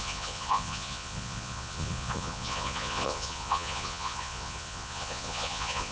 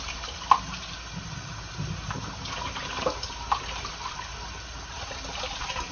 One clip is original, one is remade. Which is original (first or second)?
second